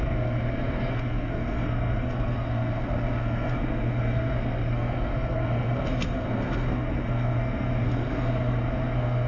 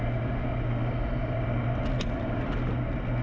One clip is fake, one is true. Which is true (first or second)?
second